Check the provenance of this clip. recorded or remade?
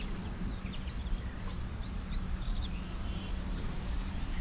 remade